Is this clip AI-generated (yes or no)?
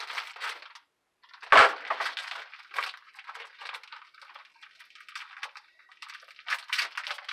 no